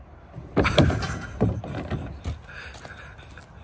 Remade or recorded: recorded